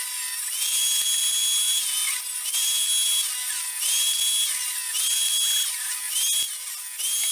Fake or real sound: real